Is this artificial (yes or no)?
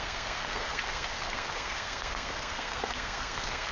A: yes